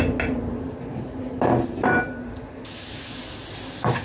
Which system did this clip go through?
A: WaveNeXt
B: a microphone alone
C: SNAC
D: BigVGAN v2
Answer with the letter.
B